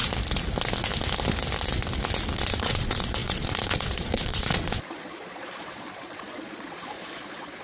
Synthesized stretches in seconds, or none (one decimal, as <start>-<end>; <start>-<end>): 2.5-7.6